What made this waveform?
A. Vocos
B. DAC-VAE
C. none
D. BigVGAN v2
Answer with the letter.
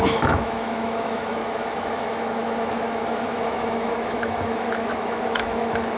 B